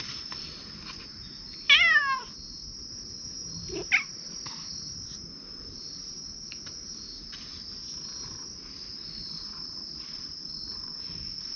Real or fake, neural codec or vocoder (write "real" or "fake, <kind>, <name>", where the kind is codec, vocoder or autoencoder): real